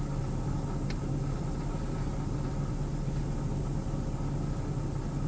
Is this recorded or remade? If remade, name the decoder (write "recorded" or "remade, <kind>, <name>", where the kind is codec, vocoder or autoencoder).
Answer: recorded